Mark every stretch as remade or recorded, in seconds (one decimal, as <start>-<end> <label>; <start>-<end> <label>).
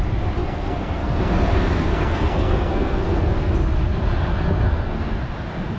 0.0-0.4 recorded; 0.4-3.5 remade; 3.5-4.3 recorded; 4.3-5.2 remade; 5.2-5.8 recorded